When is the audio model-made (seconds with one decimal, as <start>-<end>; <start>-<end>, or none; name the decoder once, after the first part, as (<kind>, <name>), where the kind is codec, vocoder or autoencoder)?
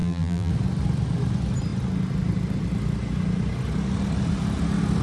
0.0-0.5 (vocoder, BigVGAN v2)